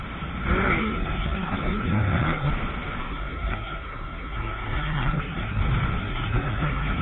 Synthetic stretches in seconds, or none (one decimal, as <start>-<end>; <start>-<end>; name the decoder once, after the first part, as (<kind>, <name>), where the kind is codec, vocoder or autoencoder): 0.8-2.5 (codec, SNAC); 3.0-5.6; 6.0-7.0